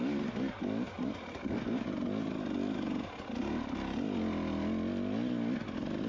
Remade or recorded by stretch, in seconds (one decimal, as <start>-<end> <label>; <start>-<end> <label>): 0.0-0.9 recorded; 0.9-1.4 remade; 1.4-6.1 recorded